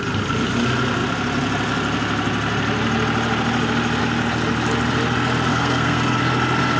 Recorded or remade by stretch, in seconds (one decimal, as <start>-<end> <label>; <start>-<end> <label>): 0.0-5.5 recorded; 5.5-6.2 remade; 6.2-6.8 recorded